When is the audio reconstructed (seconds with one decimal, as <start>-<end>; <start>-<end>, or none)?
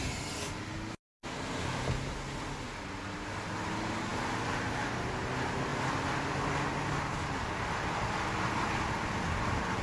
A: none